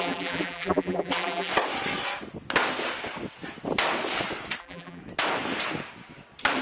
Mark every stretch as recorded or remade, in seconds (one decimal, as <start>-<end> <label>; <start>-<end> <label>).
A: 0.0-1.5 remade; 1.5-4.6 recorded; 4.6-5.0 remade; 5.0-6.6 recorded